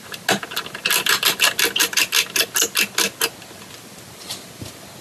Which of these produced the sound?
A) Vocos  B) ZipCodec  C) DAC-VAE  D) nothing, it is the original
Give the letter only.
D